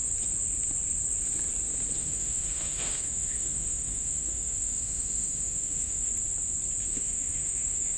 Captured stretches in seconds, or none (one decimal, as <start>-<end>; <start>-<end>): 0.0-2.0; 6.1-6.8